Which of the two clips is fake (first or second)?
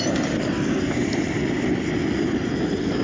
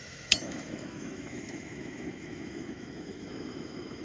second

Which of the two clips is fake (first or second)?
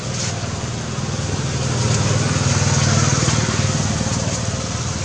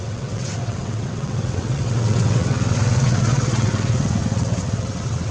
second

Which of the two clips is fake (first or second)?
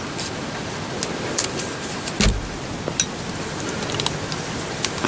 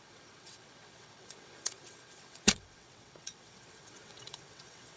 second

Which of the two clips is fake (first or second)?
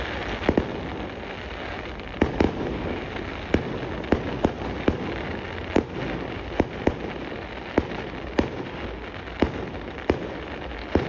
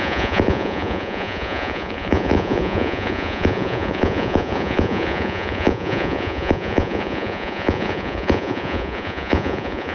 second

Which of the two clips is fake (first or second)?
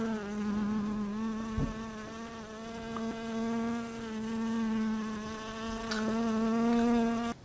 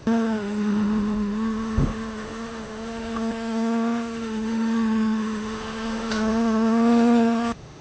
second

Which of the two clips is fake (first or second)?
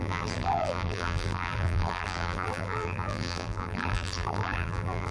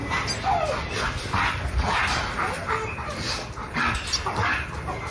first